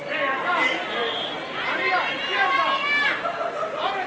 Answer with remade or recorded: recorded